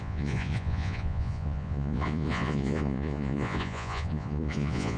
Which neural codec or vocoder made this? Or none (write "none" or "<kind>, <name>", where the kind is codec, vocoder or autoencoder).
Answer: vocoder, Vocos